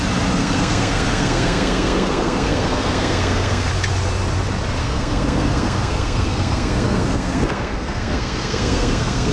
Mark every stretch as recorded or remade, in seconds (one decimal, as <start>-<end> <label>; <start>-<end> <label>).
0.0-0.4 recorded; 0.4-3.7 remade; 3.7-4.8 recorded; 4.8-9.3 remade